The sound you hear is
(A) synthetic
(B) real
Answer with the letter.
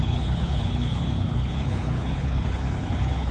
A